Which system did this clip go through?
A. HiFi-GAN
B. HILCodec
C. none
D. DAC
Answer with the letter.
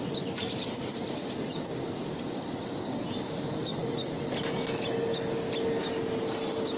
C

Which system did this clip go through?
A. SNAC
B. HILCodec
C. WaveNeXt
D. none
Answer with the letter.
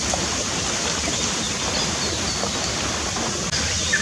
D